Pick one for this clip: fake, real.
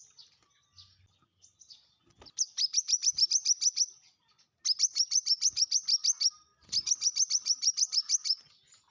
real